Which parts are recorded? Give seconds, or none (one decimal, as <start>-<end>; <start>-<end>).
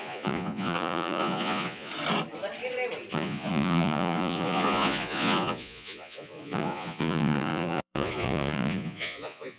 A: 1.9-3.1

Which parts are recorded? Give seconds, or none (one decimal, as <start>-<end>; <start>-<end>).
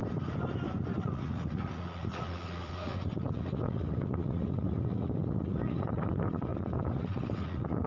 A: 0.0-1.0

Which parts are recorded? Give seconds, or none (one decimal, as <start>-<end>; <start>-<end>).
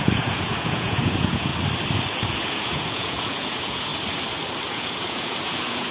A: 1.5-2.3; 3.9-4.7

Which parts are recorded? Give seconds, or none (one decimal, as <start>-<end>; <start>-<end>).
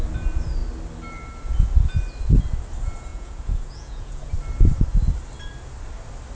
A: 0.0-3.1; 4.4-6.4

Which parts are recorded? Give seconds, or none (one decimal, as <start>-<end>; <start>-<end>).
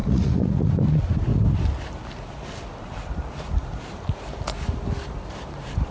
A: 0.8-5.9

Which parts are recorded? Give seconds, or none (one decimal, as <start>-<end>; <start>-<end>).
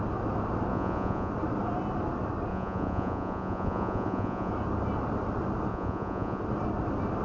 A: 0.0-0.7; 1.3-2.5; 4.5-5.7; 6.4-7.2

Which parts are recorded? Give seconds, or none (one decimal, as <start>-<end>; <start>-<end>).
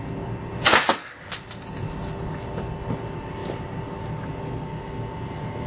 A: 0.0-5.7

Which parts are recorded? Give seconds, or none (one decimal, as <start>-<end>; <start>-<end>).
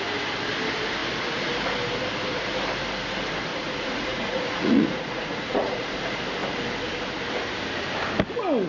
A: 0.0-3.5; 6.0-8.7